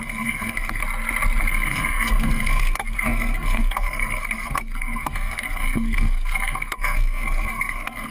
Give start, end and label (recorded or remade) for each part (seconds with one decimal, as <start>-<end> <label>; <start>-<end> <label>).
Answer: 0.0-0.8 remade; 0.8-1.4 recorded; 1.4-8.1 remade